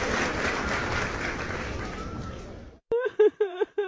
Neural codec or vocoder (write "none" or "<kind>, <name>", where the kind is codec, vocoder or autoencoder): vocoder, BigVGAN v2